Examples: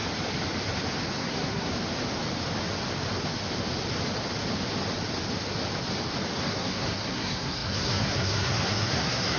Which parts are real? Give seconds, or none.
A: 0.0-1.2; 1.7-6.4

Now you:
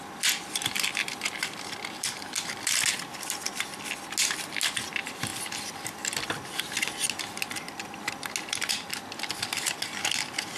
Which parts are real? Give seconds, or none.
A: 0.0-10.6

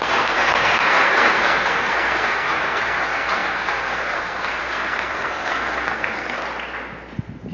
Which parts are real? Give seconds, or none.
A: 6.4-7.5

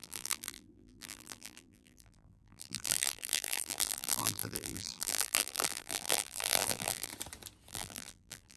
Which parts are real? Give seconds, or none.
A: 7.1-7.7

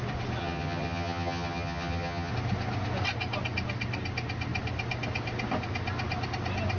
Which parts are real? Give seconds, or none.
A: 0.0-0.4; 2.3-6.8

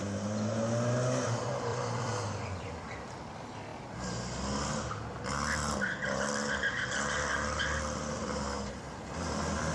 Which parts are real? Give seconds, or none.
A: 0.0-1.7; 3.0-9.7